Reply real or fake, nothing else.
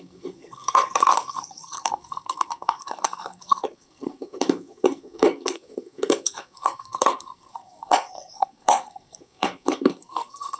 fake